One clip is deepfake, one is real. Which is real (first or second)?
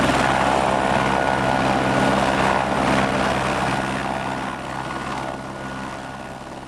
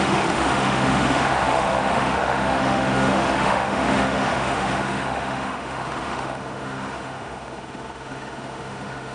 first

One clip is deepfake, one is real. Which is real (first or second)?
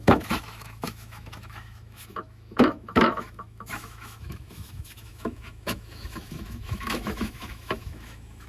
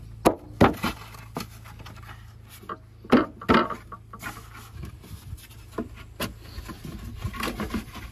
second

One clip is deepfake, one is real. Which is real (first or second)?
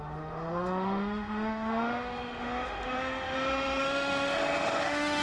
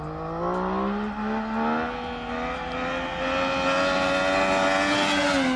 second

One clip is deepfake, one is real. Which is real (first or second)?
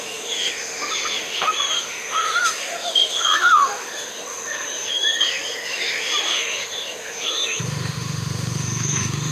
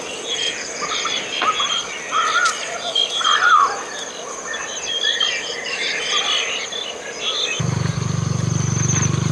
second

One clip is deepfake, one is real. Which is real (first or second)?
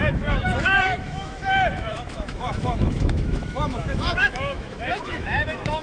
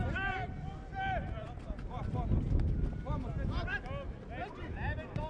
second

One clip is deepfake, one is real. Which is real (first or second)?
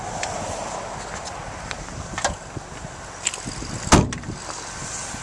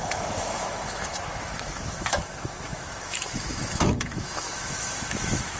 first